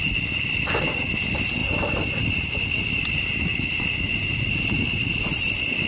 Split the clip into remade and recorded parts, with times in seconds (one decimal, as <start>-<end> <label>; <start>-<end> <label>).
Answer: 0.0-1.6 recorded; 1.6-5.1 remade; 5.1-5.9 recorded